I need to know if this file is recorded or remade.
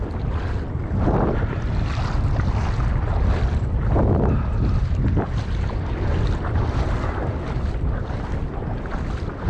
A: recorded